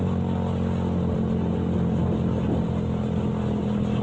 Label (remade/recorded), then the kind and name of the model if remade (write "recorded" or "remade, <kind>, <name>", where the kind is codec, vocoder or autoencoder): recorded